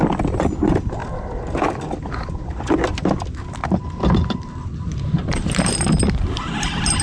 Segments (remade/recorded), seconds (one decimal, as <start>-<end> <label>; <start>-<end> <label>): 0.0-1.0 recorded; 1.0-2.3 remade; 2.3-5.2 recorded; 5.2-6.0 remade; 6.0-7.0 recorded